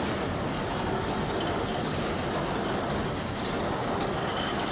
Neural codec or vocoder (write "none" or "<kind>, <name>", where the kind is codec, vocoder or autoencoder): none